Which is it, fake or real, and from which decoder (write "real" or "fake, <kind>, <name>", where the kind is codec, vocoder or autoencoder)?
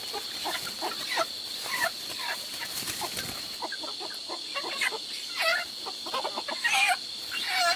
real